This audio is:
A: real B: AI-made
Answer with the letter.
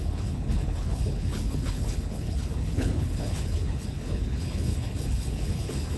B